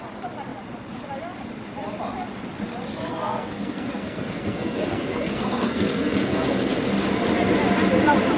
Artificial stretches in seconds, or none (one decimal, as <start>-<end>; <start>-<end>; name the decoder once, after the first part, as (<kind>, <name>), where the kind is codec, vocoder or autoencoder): 3.1-6.7 (codec, SNAC)